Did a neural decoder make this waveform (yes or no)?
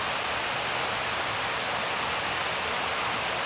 no